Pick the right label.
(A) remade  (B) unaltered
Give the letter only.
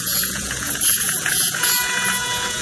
A